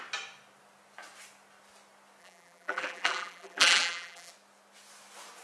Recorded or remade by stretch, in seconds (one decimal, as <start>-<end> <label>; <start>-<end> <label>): 0.0-2.2 recorded; 2.2-4.3 remade; 4.3-5.4 recorded